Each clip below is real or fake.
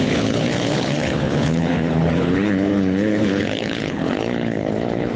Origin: fake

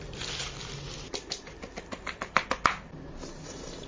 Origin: real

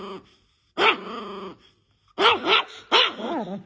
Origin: real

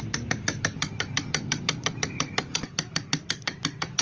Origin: real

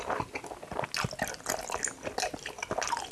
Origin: real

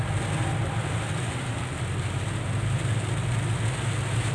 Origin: real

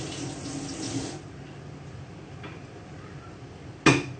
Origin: real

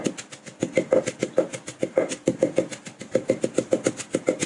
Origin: real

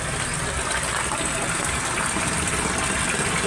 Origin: real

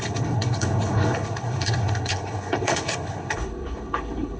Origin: fake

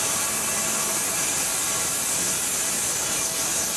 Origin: real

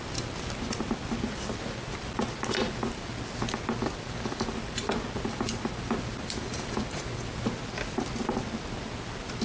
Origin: real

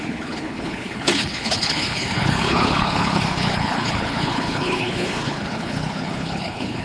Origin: fake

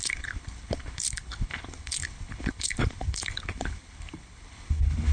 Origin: fake